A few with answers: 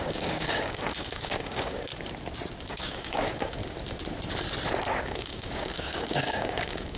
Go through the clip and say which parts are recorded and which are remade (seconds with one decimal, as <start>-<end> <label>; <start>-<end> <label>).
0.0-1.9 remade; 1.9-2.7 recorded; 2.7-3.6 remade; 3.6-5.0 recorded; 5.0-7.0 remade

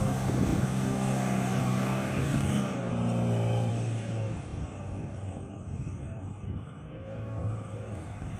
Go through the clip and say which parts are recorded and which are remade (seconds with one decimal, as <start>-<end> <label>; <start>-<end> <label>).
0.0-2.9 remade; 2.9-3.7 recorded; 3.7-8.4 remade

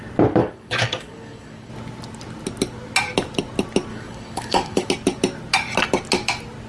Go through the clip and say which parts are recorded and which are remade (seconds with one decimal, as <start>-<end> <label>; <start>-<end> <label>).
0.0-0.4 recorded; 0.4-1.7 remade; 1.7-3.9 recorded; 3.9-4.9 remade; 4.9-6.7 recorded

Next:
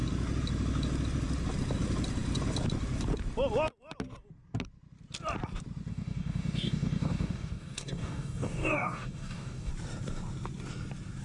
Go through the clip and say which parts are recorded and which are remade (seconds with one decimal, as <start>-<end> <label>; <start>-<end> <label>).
0.0-5.9 recorded; 5.9-9.7 remade; 9.7-11.2 recorded